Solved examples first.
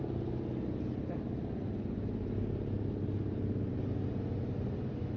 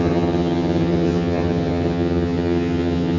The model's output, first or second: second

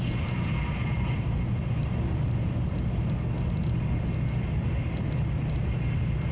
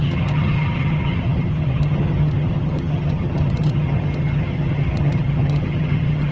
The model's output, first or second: second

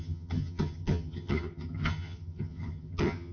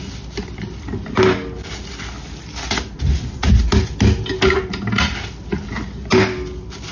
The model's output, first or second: first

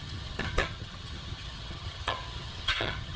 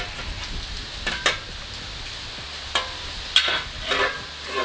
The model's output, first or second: first